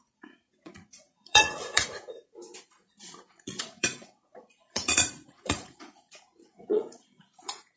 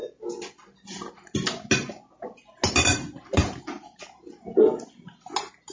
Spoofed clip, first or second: first